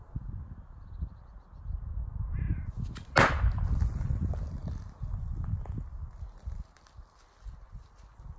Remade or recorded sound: recorded